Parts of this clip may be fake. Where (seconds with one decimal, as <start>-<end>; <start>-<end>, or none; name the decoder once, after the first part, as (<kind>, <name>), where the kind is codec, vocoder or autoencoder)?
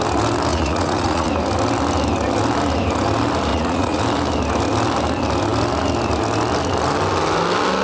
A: 0.5-1.3 (vocoder, Vocos); 3.5-4.0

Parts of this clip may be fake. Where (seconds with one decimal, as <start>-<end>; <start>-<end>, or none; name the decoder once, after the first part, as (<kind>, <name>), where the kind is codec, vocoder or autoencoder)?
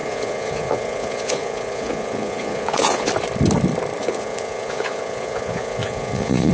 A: 0.0-3.1 (vocoder, Vocos); 4.0-6.5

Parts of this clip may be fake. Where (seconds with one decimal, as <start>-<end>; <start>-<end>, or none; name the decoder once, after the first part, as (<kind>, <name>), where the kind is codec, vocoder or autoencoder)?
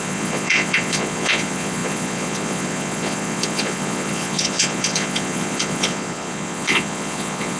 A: 0.0-7.6 (vocoder, Vocos)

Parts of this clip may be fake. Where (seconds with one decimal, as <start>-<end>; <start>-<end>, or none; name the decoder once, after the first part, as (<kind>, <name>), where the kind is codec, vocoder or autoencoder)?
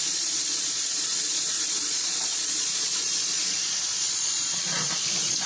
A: 0.0-5.5 (vocoder, Vocos)